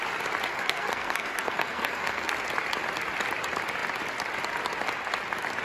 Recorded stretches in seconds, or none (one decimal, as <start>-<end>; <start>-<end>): 0.0-0.5; 2.3-5.6